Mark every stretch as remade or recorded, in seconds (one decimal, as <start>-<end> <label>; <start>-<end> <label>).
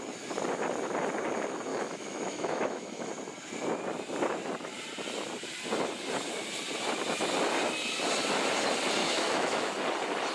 0.0-1.7 recorded; 1.7-3.1 remade; 3.1-9.0 recorded; 9.0-9.7 remade; 9.7-10.3 recorded